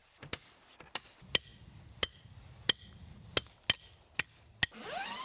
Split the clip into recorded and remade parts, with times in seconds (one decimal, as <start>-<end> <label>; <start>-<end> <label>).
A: 0.0-5.2 recorded